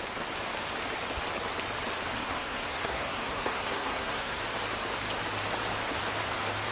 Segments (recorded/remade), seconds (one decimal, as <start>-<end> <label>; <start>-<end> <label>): 0.0-2.2 recorded; 2.2-4.4 remade; 4.4-6.7 recorded